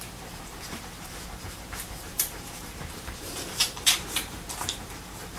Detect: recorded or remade remade